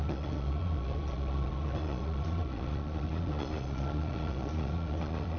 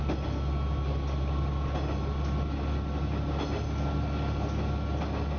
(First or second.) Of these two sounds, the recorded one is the second